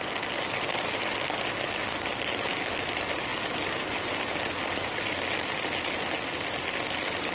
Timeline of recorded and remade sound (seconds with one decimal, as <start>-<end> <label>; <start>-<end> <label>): 0.0-7.3 recorded